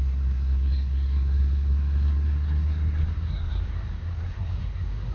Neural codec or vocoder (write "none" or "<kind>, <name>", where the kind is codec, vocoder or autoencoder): codec, SNAC